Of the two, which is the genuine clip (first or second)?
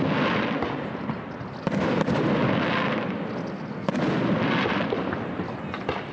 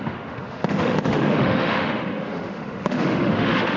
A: first